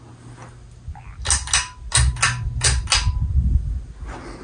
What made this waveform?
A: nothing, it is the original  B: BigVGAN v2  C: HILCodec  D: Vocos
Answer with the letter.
A